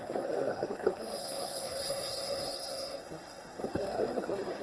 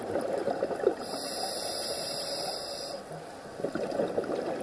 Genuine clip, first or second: second